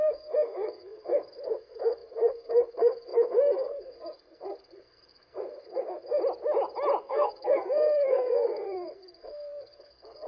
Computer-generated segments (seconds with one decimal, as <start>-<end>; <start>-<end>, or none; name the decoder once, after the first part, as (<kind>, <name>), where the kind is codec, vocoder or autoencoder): 0.0-6.2 (codec, SNAC); 7.0-10.3